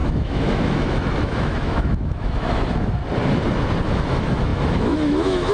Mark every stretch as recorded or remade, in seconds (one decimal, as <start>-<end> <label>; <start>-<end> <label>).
0.0-3.0 remade; 3.0-3.8 recorded; 3.8-5.5 remade